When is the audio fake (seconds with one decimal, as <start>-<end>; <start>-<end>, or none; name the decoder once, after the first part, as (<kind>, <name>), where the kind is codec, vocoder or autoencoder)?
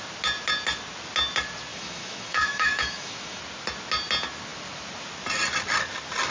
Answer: 1.7-3.4 (autoencoder, DAC-VAE)